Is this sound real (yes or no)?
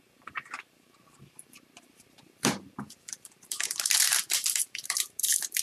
no